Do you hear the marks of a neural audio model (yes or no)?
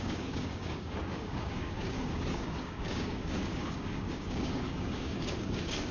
yes